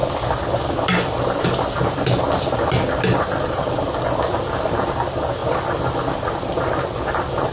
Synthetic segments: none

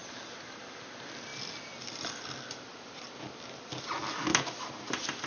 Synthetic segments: none